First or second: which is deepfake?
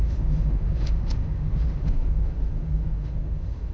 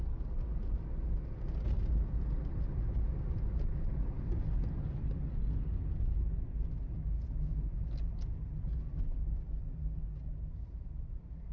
first